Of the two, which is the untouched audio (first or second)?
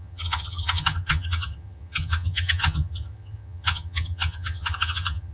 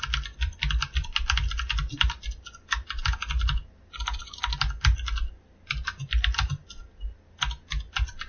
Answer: second